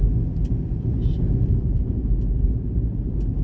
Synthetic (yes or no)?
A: no